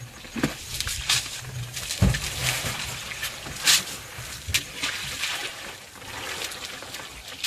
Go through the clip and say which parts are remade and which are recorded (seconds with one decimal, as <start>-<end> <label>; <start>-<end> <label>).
0.0-7.5 recorded